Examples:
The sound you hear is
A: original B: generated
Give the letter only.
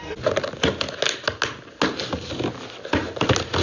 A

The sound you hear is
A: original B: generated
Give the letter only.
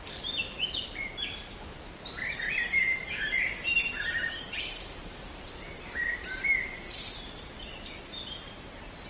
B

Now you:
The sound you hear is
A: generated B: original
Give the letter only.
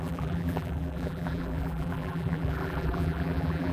A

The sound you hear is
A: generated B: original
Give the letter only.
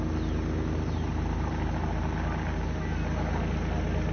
B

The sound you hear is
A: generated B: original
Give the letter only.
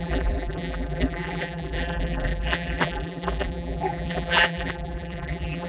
A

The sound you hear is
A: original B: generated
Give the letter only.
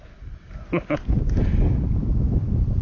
A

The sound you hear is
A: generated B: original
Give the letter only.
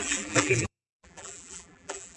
A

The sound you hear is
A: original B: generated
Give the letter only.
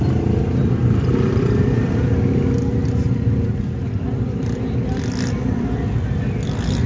A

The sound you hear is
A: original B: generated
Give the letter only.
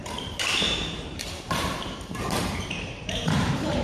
B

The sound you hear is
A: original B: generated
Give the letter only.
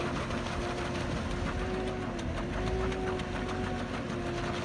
A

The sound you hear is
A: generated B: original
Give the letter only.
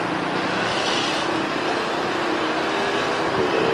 B